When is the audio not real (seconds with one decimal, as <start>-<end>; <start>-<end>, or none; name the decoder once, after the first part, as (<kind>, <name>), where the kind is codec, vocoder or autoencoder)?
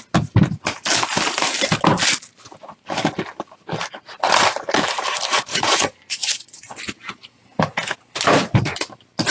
5.5-6.8 (vocoder, Vocos)